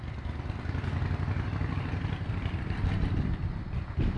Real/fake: fake